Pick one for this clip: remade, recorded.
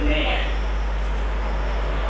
recorded